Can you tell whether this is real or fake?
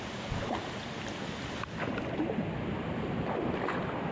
real